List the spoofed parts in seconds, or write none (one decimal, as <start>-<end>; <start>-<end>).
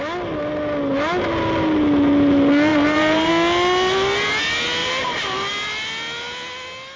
2.7-3.3; 4.8-5.5